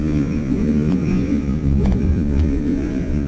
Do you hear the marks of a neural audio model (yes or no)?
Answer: yes